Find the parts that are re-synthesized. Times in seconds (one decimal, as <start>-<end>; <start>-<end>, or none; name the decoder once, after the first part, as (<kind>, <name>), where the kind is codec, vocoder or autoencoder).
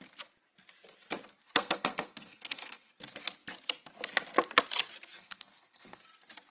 1.4-2.9 (codec, SNAC); 5.1-6.0